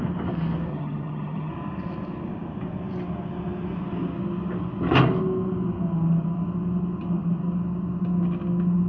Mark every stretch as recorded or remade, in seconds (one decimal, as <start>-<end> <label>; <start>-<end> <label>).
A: 0.0-0.7 recorded; 0.7-1.5 remade; 1.5-8.9 recorded